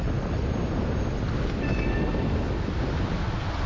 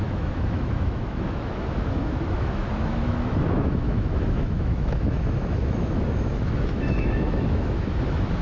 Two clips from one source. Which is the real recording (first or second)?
first